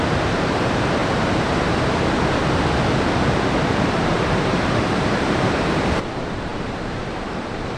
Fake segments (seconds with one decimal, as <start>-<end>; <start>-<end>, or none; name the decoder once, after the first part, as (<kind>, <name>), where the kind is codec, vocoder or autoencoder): 0.0-1.0 (vocoder, BigVGAN v2); 3.9-7.8